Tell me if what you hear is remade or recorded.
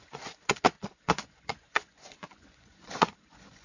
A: remade